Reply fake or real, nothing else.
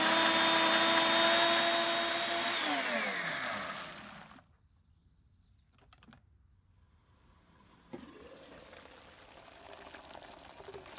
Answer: real